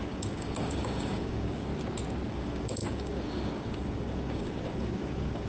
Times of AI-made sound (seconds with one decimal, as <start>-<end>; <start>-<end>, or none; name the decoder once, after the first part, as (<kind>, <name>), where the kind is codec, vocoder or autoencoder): 0.0-1.7 (codec, DAC); 2.3-5.5